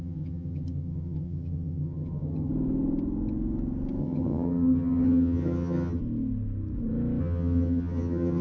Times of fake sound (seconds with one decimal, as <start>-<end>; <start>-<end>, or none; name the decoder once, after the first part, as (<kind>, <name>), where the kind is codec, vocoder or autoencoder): 0.0-2.5 (vocoder, HiFi-GAN); 4.0-6.0; 7.2-8.4